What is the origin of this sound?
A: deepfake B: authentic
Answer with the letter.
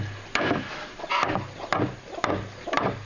B